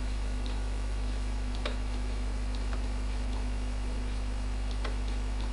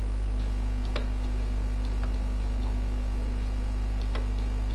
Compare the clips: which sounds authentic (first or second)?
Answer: second